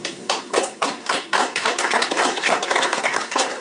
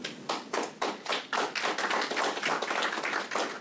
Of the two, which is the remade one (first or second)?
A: first